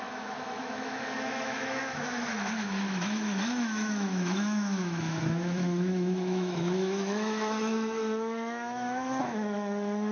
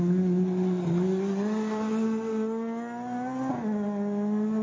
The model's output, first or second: first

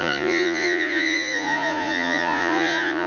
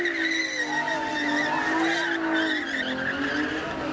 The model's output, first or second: first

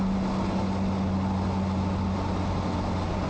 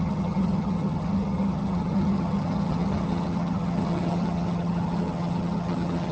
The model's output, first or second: second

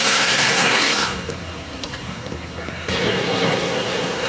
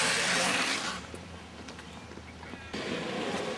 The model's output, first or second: first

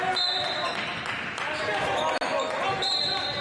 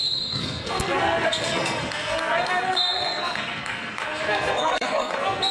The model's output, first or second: second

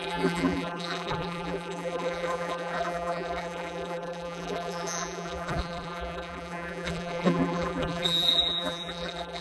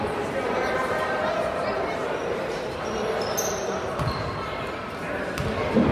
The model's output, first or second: first